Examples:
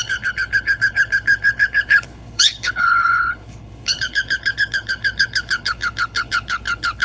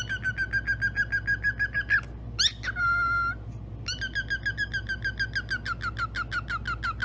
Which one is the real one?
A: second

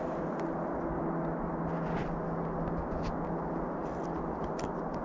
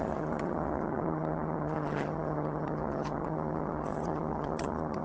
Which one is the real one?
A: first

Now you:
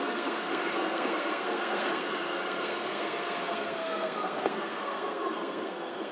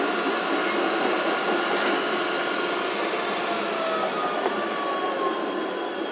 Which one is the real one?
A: second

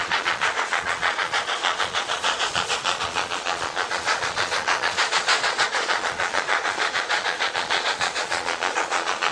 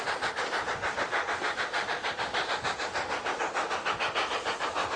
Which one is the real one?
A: second